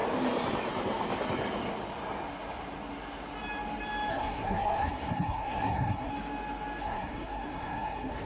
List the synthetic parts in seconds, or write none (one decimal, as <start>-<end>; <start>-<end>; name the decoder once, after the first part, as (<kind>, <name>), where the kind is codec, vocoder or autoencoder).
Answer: 4.1-6.1 (codec, SNAC); 6.8-8.3